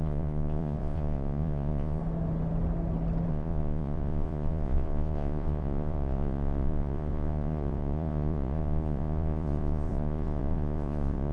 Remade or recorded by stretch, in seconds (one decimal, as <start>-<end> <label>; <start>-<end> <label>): 0.0-2.0 remade; 2.0-3.3 recorded; 3.3-11.3 remade